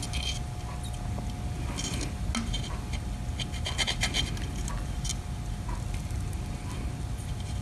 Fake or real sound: real